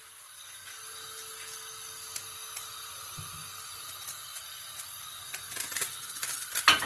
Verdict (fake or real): real